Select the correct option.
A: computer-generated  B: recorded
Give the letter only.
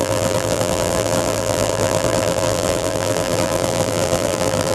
A